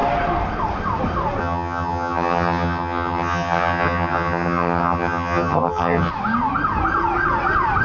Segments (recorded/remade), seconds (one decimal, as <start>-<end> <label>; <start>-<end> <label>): 0.0-1.4 recorded; 1.4-6.1 remade; 6.1-7.8 recorded